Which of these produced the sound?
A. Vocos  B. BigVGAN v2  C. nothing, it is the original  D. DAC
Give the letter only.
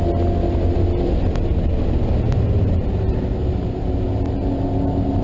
C